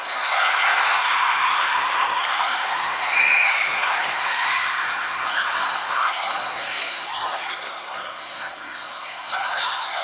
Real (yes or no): no